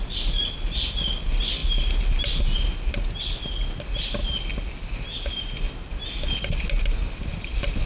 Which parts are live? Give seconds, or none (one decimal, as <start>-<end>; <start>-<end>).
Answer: 0.0-7.9